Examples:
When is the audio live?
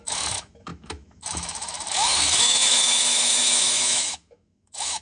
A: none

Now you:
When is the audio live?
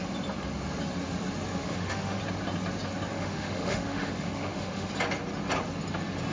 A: 0.0-1.6; 2.2-3.1; 4.9-6.3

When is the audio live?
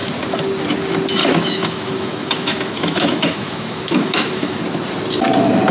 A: 0.0-1.2; 4.6-5.7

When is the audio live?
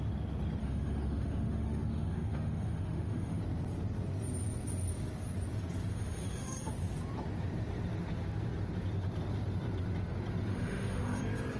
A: 0.0-0.6; 3.4-5.9; 6.7-10.5; 11.2-11.6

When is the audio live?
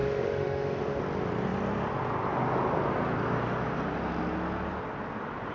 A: 1.0-5.5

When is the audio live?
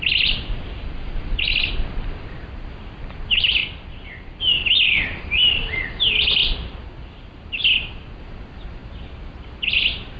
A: 0.0-10.2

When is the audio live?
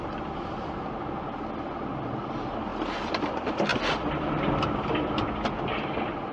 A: 0.0-6.3